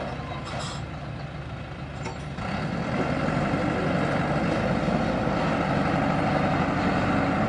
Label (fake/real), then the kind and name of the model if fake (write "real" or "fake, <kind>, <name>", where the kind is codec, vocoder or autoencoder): real